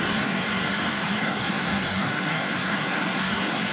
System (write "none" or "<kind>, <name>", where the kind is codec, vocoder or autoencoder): codec, SNAC